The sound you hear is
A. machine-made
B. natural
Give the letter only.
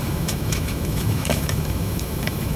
A